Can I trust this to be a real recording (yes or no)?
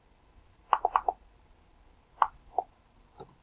yes